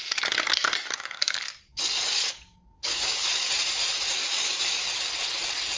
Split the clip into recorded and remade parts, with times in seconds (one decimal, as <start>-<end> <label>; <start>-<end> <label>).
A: 0.0-3.5 remade; 3.5-4.1 recorded; 4.1-4.8 remade; 4.8-5.8 recorded